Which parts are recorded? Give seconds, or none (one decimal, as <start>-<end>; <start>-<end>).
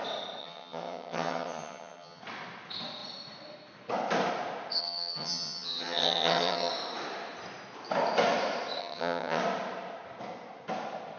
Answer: 0.0-0.4; 2.2-4.8; 6.7-8.8; 9.4-11.2